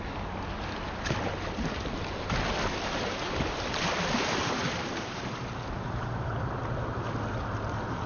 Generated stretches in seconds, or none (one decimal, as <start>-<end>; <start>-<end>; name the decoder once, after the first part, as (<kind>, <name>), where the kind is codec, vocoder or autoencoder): 4.4-6.6 (vocoder, BigVGAN v2)